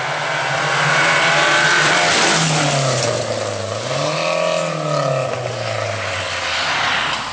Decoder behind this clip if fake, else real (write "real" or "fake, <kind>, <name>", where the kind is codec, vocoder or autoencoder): real